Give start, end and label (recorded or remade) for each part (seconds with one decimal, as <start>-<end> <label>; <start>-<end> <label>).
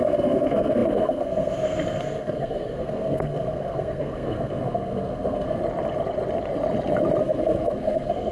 0.0-5.6 remade; 5.6-7.2 recorded; 7.2-8.3 remade